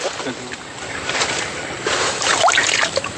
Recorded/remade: recorded